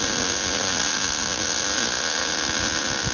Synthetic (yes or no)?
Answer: no